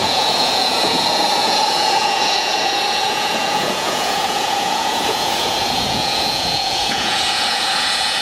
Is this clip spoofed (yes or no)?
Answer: yes